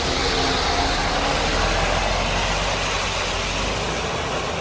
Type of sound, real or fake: real